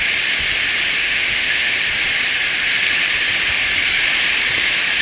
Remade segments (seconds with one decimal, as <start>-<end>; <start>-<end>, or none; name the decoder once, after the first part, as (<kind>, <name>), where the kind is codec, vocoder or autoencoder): 1.0-1.8 (autoencoder, DAC-VAE)